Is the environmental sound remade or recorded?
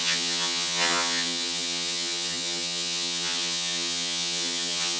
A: remade